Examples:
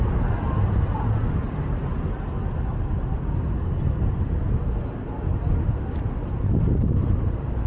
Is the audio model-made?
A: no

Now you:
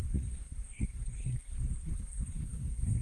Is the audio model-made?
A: yes